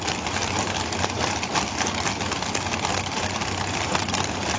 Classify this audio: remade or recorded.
recorded